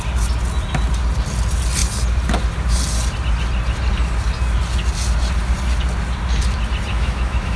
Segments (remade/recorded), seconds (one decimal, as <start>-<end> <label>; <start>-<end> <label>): 0.0-6.9 recorded; 6.9-7.6 remade